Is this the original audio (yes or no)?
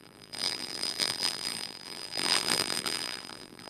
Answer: no